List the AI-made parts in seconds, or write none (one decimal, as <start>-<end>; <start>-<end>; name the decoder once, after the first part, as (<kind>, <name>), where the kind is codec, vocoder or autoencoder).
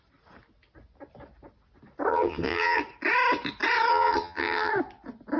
2.1-2.8 (vocoder, HiFi-GAN); 3.9-4.7